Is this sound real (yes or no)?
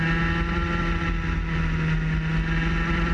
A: yes